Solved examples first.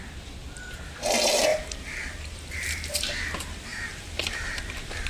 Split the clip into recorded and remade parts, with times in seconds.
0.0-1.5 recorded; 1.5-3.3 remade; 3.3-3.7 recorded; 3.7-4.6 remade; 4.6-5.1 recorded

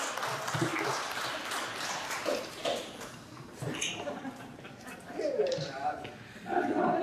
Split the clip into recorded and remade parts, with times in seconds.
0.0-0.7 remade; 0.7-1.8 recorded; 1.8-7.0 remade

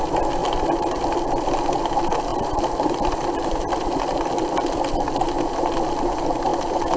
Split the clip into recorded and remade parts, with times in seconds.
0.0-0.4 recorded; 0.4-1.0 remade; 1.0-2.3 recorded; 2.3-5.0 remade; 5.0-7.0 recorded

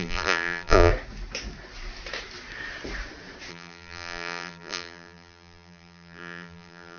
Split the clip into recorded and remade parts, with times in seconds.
0.0-0.9 remade; 0.9-3.5 recorded; 3.5-7.0 remade

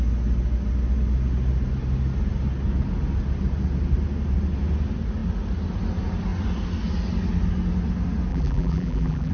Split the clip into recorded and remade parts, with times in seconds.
0.0-8.3 recorded; 8.3-9.3 remade